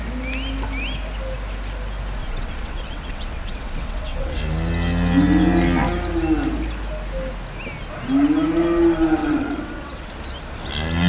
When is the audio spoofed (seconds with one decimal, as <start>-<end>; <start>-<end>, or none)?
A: 2.2-4.4; 9.2-10.1